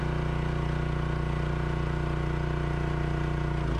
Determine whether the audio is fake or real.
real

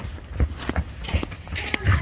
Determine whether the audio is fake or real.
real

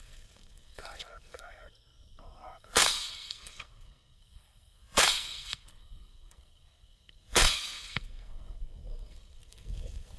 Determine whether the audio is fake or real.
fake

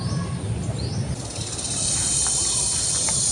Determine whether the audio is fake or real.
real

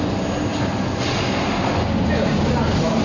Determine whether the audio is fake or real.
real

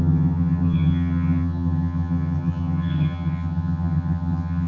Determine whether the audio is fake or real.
fake